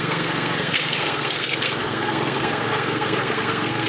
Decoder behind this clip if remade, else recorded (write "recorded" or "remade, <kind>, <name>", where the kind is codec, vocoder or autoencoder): remade, codec, SNAC